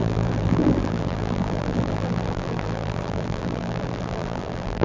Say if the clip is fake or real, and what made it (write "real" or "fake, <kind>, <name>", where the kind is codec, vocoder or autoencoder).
fake, vocoder, BigVGAN v2